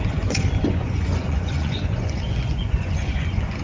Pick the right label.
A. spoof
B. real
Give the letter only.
A